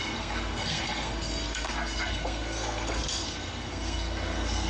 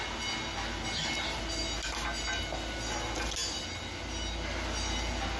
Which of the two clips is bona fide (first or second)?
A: second